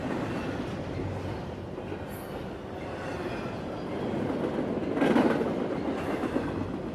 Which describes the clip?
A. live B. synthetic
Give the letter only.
A